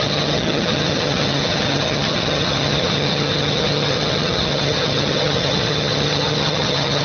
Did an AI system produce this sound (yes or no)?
yes